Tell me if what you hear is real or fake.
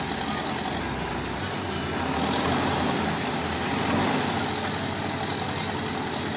real